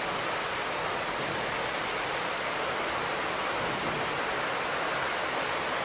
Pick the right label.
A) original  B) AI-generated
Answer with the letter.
A